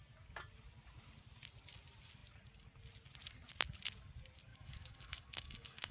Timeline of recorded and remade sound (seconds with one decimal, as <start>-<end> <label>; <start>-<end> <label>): 0.0-4.5 recorded; 4.5-5.9 remade